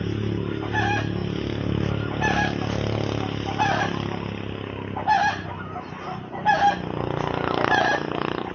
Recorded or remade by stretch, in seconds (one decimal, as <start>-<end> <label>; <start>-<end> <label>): 0.0-8.5 recorded